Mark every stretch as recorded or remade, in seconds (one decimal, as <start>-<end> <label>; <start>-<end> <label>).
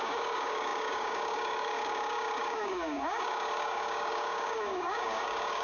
0.0-5.6 remade